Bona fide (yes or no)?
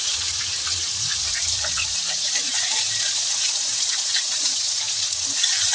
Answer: no